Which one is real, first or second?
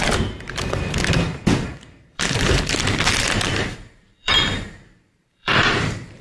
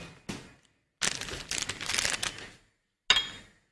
second